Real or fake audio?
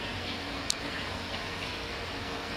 fake